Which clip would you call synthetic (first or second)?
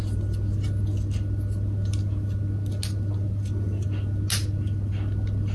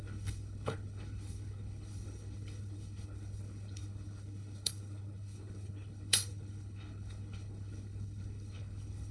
second